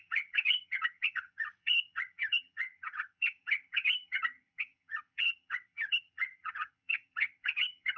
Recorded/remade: remade